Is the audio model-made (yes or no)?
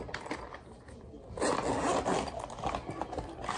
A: no